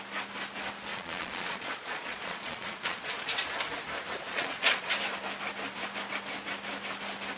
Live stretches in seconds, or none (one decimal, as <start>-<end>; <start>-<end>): 0.0-0.9; 3.2-4.3; 4.9-7.4